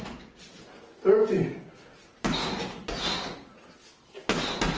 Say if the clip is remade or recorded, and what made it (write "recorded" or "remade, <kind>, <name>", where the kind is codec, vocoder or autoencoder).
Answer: recorded